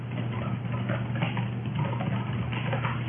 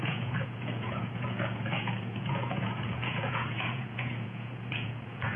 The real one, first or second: first